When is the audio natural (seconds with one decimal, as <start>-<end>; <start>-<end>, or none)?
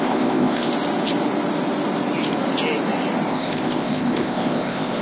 0.7-3.3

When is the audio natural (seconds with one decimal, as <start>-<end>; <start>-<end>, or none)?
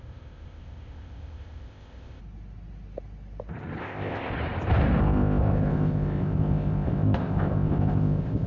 2.2-3.8; 4.3-5.0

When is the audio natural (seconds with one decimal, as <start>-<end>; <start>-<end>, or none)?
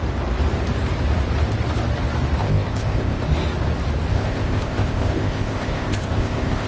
0.0-2.4; 3.2-4.1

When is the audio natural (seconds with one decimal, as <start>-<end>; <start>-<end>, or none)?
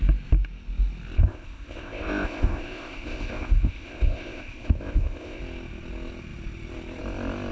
0.0-1.2; 5.4-7.5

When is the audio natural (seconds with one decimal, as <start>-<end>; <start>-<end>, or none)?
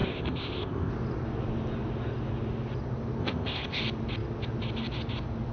0.9-3.2; 3.8-5.5